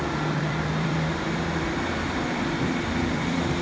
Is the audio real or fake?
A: fake